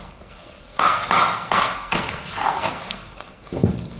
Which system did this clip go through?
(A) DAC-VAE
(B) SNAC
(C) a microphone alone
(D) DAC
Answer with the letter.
B